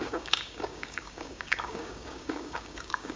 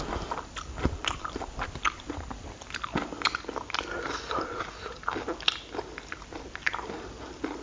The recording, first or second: second